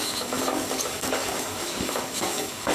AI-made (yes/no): yes